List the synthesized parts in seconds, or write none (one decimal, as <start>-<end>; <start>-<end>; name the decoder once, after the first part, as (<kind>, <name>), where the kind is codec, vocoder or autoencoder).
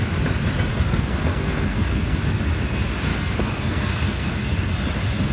0.7-2.2 (codec, SNAC); 3.1-4.3